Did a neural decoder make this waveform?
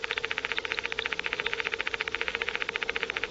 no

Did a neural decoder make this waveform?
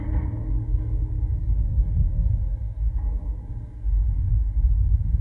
yes